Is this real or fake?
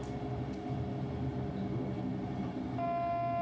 real